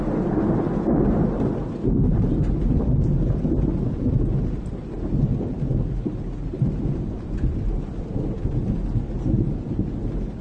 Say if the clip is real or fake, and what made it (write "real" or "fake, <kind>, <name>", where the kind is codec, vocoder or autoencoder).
real